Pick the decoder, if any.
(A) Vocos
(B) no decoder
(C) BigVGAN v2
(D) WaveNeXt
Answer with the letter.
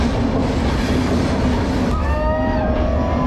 B